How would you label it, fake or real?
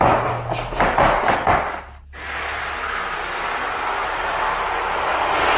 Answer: real